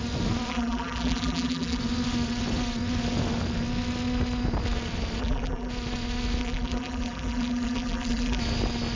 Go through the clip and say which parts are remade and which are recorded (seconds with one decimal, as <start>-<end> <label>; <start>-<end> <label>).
0.0-0.5 recorded; 0.5-1.8 remade; 1.8-5.2 recorded; 5.2-5.7 remade; 5.7-6.4 recorded; 6.4-8.4 remade; 8.4-9.0 recorded